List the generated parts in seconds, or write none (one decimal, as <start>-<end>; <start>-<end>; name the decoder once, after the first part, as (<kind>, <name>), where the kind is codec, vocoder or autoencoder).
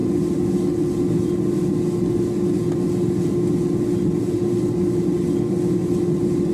none